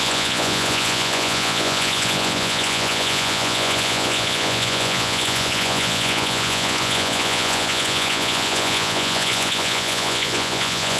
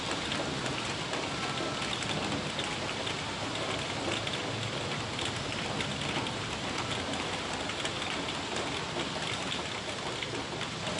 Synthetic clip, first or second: first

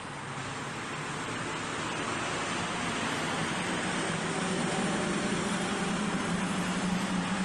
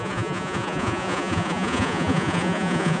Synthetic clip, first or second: second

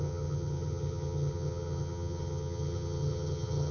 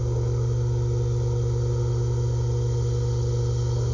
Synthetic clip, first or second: first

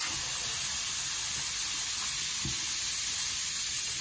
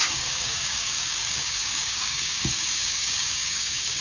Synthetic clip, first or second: second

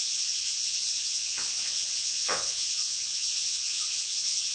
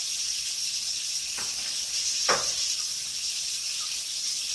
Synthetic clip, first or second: first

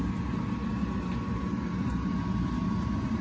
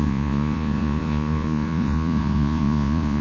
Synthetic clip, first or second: second